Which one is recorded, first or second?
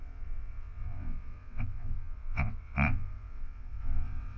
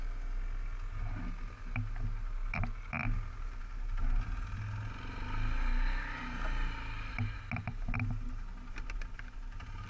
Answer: second